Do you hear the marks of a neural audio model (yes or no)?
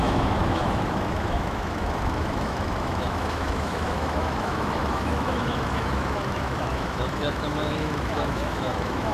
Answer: yes